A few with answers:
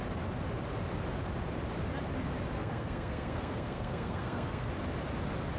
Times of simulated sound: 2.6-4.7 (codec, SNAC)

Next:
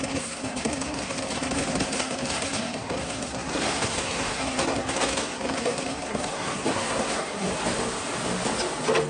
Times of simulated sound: 0.0-7.5 (codec, SNAC)

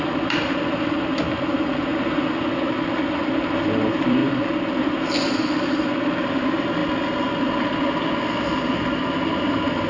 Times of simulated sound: 0.0-1.9 (vocoder, BigVGAN v2); 2.9-6.8

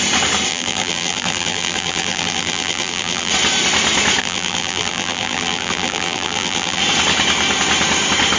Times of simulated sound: 0.5-3.3 (vocoder, BigVGAN v2); 4.2-6.8

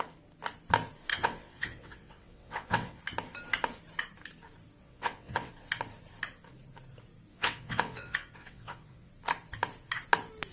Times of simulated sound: 1.1-3.0 (vocoder, WaveNeXt); 4.8-5.5; 7.3-9.1

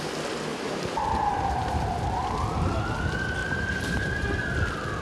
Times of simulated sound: 0.5-1.7 (vocoder, BigVGAN v2); 3.4-4.4

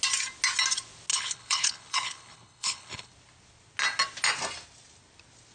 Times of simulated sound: 1.1-3.1 (codec, HILCodec)

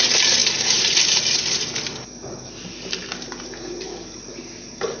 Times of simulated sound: none